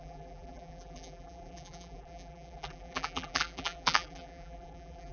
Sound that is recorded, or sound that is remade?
remade